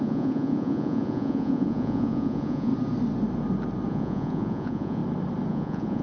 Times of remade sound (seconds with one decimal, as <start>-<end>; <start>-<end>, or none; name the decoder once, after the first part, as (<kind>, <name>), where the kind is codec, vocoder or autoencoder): 0.0-2.7 (vocoder, Vocos); 3.9-5.0; 5.5-6.0